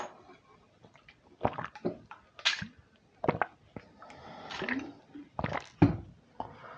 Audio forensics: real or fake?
real